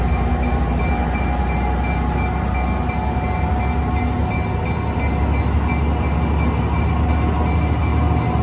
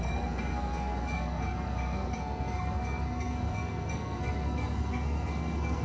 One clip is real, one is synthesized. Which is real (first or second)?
first